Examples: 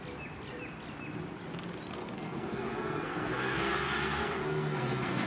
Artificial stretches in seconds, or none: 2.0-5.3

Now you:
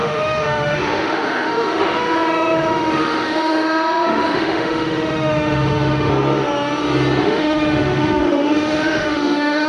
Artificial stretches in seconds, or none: 0.0-6.1; 7.2-9.7

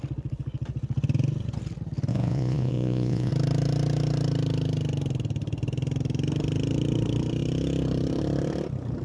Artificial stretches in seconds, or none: 2.1-3.3

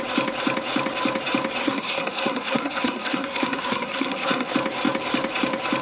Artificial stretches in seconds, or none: 1.6-4.5

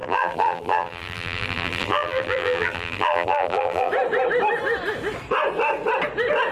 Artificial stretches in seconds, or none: 0.0-3.9

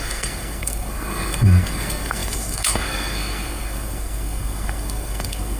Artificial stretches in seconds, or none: 0.0-5.6

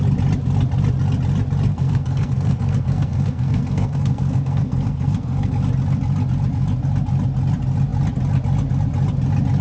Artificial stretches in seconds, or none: 1.7-5.6